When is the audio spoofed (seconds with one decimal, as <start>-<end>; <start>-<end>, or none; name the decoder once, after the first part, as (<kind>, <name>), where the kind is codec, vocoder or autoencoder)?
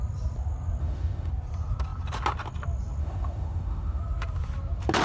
0.8-1.3 (autoencoder, DAC-VAE); 3.0-4.0